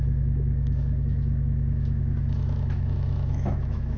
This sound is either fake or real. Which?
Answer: fake